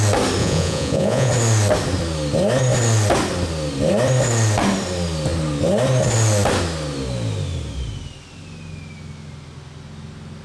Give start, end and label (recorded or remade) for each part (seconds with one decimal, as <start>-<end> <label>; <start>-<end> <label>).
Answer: 0.0-0.4 recorded; 0.4-1.3 remade; 1.3-10.4 recorded

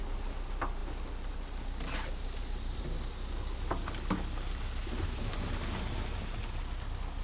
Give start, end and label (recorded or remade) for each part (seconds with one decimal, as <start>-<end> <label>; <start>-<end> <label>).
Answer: 0.0-7.2 recorded

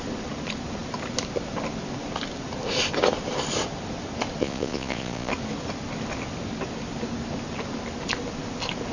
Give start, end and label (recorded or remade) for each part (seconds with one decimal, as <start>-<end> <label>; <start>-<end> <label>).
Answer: 0.0-4.4 recorded; 4.4-5.3 remade; 5.3-8.9 recorded

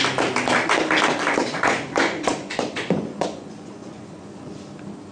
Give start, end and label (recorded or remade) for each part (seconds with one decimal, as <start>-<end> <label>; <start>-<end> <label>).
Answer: 0.0-1.4 recorded; 1.4-4.5 remade; 4.5-5.1 recorded